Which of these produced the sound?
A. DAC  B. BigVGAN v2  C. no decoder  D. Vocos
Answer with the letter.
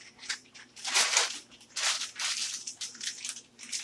B